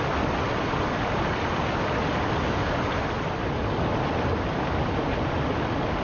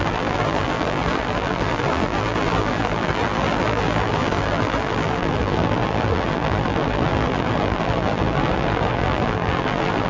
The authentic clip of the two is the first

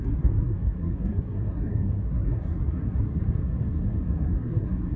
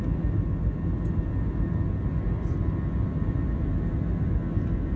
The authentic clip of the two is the second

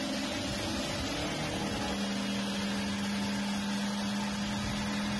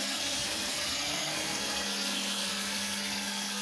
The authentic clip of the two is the first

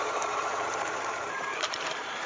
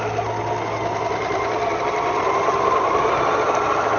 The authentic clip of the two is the second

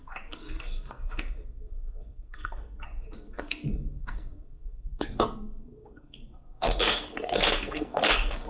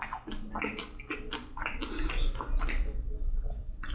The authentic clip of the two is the second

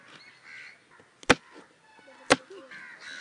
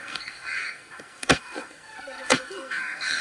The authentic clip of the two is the first